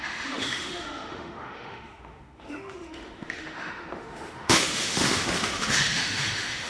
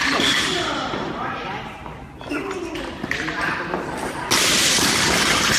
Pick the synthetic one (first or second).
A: first